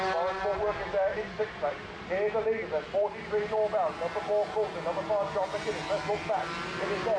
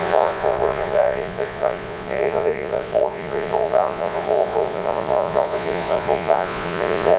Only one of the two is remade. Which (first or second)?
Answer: second